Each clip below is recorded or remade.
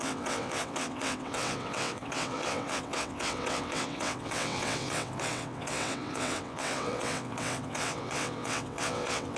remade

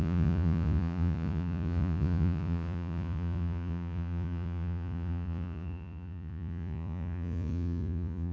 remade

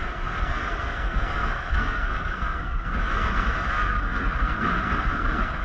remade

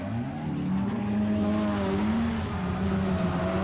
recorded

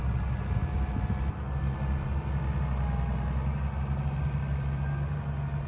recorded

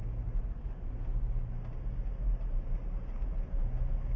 recorded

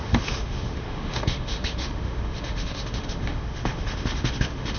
remade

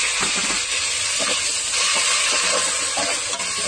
recorded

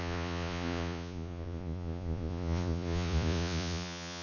remade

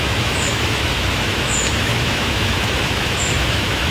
remade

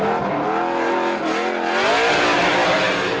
recorded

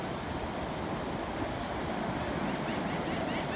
recorded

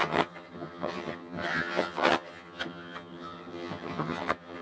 remade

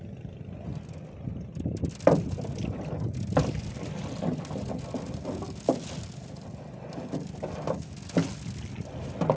recorded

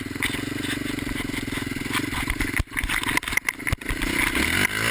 recorded